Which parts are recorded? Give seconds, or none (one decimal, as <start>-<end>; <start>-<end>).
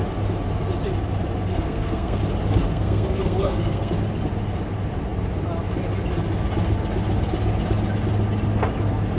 0.0-1.5; 2.2-2.6; 3.9-9.2